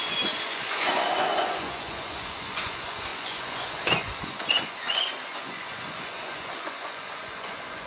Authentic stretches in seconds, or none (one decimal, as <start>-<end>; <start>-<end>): none